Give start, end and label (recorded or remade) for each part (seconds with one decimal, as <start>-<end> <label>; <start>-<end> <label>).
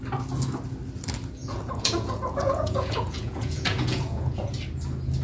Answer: 0.0-1.4 recorded; 1.4-4.5 remade; 4.5-5.2 recorded